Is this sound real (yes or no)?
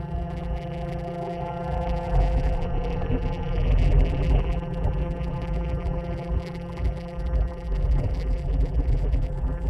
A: no